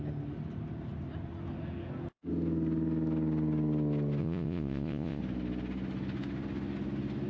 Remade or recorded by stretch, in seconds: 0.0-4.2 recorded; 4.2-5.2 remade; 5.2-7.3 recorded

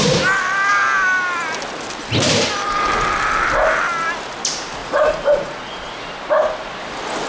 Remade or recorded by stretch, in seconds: 0.0-4.8 recorded; 4.8-5.9 remade; 5.9-7.3 recorded